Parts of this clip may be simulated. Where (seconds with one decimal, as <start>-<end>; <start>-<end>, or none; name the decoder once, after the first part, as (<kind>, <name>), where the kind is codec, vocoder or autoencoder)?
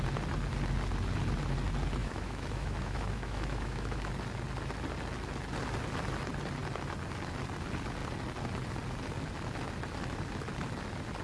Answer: 2.0-4.1 (autoencoder, DAC-VAE)